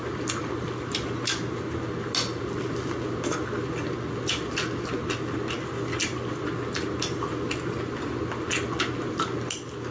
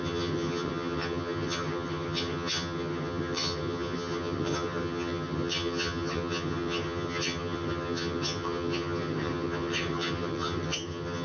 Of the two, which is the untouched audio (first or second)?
first